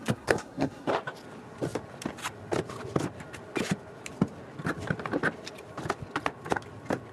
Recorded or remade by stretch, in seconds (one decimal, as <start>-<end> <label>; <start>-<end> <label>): 0.0-0.9 remade; 0.9-7.1 recorded